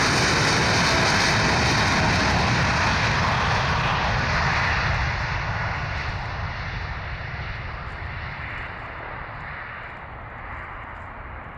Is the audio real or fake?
real